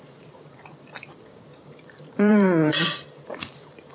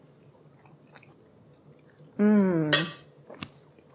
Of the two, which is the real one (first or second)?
second